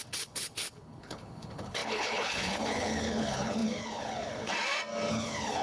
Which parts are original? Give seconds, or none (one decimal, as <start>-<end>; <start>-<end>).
4.5-5.1